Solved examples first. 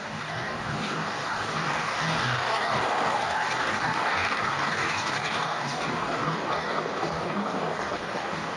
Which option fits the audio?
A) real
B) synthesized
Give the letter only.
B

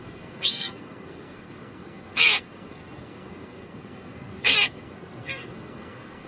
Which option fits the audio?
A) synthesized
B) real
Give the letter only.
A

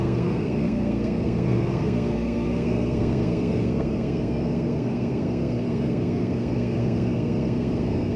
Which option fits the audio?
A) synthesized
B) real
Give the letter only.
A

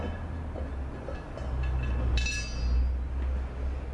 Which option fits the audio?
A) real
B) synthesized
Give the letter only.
A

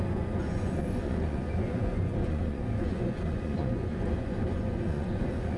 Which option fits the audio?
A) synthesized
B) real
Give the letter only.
A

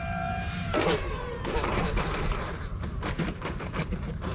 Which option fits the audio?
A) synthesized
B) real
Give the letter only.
A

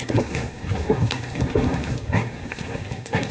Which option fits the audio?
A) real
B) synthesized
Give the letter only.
B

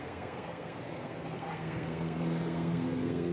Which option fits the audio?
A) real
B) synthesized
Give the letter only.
B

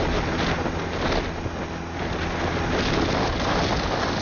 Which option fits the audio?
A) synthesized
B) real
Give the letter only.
B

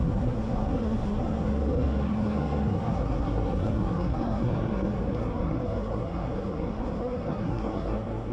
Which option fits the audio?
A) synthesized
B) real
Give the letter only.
A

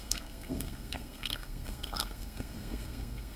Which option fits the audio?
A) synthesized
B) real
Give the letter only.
A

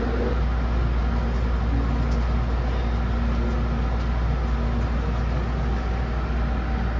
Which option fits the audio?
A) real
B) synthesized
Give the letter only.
A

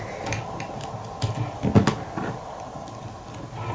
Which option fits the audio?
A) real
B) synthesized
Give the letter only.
A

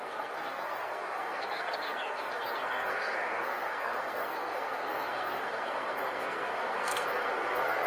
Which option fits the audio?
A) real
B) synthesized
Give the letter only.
B